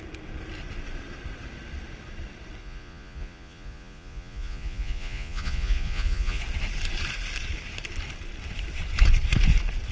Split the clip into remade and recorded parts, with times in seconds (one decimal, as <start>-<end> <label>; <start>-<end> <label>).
0.0-2.6 recorded; 2.6-6.4 remade; 6.4-9.9 recorded